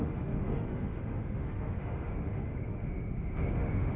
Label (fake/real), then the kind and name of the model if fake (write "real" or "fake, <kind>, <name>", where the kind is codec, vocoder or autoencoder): fake, autoencoder, DAC-VAE